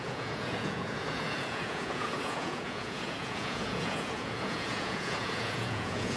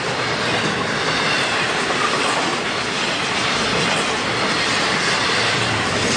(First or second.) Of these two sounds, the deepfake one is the first